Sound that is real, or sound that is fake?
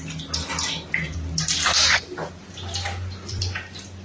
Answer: fake